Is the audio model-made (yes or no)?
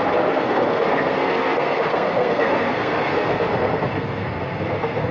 yes